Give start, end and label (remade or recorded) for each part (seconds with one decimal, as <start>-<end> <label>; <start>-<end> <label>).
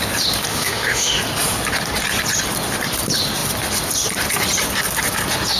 0.0-0.5 recorded; 0.5-1.2 remade; 1.2-5.6 recorded